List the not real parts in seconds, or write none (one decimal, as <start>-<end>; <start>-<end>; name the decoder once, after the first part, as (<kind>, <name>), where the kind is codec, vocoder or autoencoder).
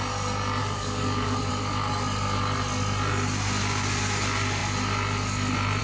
0.6-1.5 (codec, DAC)